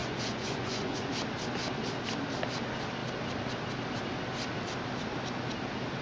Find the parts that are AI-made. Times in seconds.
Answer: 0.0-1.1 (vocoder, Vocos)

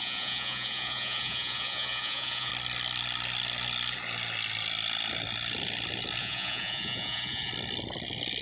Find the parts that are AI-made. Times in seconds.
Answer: 0.0-2.5 (vocoder, Vocos); 6.2-7.5

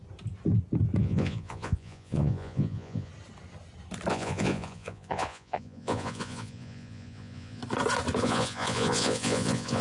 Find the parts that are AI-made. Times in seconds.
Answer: 1.0-3.1 (vocoder, Vocos); 4.1-7.6; 8.2-9.8

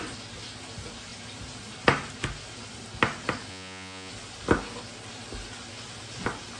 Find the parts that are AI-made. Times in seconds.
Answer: 3.5-4.1 (vocoder, Vocos)

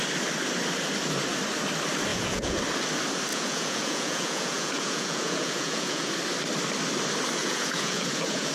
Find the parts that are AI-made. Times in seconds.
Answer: 2.1-2.6 (vocoder, Vocos); 3.3-6.1; 7.4-8.5

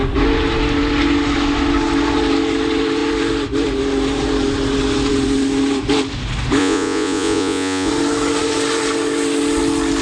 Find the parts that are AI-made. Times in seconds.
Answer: 6.6-7.9 (vocoder, Vocos)